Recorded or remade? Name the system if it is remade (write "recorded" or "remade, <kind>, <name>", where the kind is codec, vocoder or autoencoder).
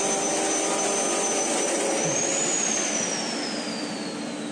recorded